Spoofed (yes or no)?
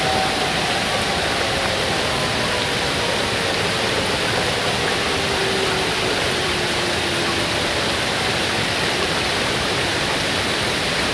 no